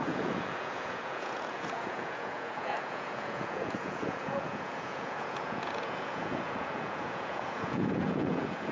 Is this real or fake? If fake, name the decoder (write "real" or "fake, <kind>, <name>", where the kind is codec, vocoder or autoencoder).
fake, vocoder, Vocos